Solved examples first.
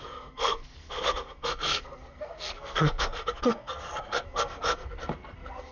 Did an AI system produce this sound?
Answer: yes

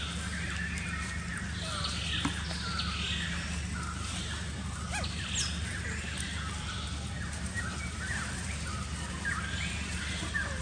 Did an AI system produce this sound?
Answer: no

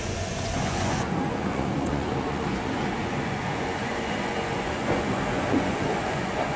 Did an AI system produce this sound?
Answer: yes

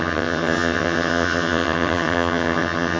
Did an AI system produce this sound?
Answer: yes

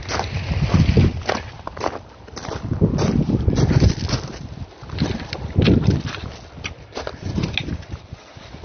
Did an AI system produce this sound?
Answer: no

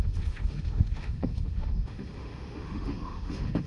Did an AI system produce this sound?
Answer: yes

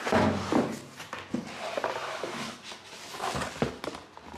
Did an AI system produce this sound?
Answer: no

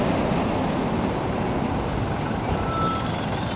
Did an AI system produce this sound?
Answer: no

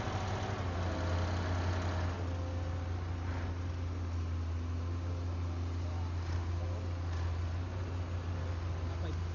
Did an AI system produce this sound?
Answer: no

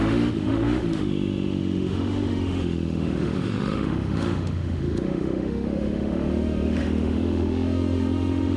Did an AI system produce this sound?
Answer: yes